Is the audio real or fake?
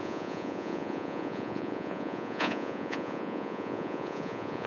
fake